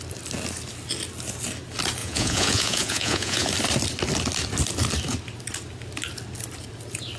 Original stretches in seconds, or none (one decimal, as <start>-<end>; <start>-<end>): 0.0-2.0; 3.5-7.2

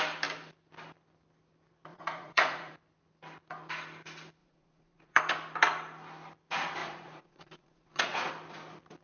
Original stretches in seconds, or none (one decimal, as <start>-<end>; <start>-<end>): 0.0-1.9; 2.7-4.4; 5.2-6.8; 8.3-9.0

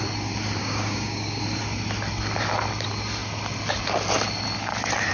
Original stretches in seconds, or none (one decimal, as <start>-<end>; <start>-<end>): 0.0-0.6; 1.4-5.1